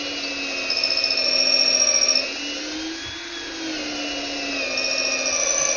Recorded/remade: recorded